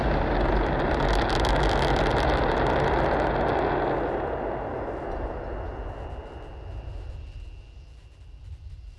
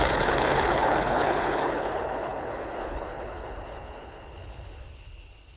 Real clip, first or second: first